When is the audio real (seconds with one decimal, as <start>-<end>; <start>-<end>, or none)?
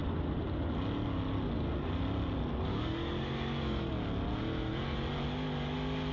0.0-2.7; 3.9-6.1